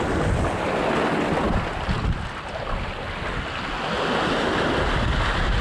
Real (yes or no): yes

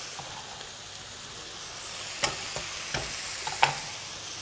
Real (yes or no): yes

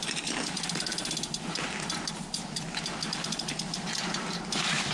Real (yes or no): no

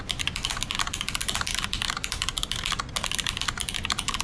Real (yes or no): yes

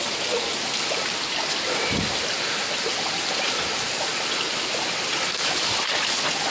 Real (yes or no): yes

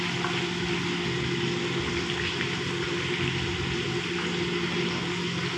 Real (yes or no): yes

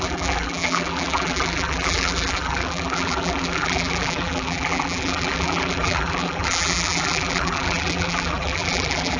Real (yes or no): no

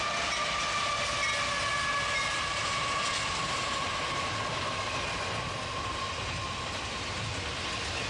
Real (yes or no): yes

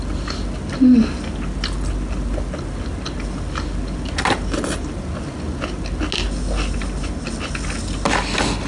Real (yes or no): yes